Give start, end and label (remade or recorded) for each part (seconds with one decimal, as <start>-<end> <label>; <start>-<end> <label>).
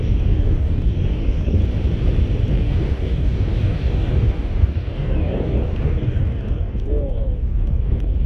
0.0-1.6 remade; 1.6-2.5 recorded; 2.5-8.3 remade